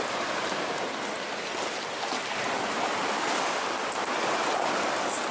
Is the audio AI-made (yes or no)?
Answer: no